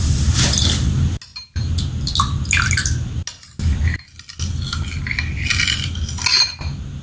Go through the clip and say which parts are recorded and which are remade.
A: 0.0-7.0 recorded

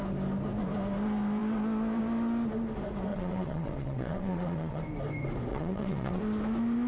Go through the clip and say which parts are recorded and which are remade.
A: 0.0-3.1 recorded; 3.1-4.8 remade; 4.8-5.5 recorded; 5.5-6.2 remade; 6.2-6.9 recorded

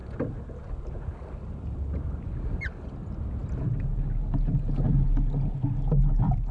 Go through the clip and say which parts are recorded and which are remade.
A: 0.0-6.5 recorded

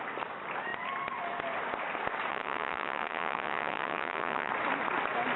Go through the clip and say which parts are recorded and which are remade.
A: 0.0-2.3 recorded; 2.3-4.5 remade; 4.5-5.4 recorded

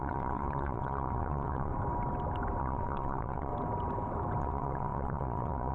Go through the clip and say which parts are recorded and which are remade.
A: 0.0-1.7 remade; 1.7-2.6 recorded; 2.6-3.5 remade; 3.5-4.4 recorded; 4.4-5.7 remade

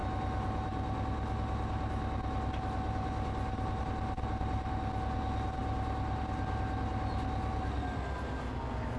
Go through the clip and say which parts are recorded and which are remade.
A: 0.0-9.0 recorded